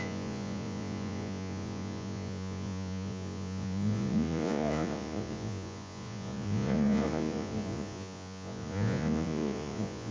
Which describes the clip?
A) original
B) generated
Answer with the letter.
B